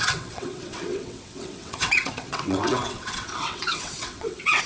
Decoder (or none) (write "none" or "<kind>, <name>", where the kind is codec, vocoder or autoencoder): vocoder, WaveNeXt